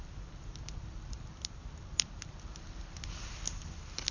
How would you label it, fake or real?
fake